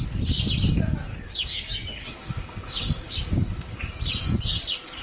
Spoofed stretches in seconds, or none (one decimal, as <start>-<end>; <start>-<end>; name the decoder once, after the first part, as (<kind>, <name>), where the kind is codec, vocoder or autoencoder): 1.1-3.9 (codec, DAC)